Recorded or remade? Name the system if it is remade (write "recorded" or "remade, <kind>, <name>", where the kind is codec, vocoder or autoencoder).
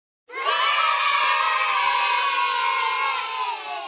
recorded